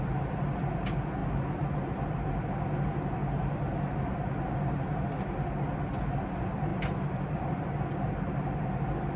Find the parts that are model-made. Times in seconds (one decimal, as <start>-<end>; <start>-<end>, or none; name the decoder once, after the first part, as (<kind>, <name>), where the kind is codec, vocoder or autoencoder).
none